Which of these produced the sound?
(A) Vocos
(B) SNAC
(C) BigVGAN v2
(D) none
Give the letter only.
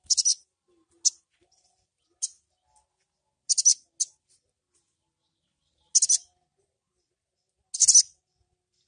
D